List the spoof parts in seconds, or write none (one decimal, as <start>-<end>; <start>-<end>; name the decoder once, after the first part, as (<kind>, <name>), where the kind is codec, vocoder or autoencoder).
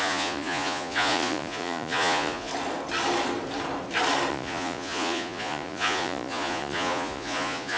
0.0-2.5 (vocoder, Vocos); 4.3-7.8